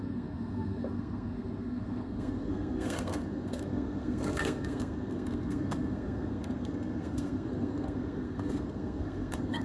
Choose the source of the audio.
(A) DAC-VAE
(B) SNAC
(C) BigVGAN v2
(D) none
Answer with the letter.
B